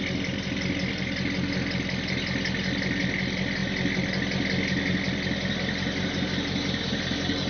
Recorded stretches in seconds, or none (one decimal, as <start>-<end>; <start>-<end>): 0.0-7.5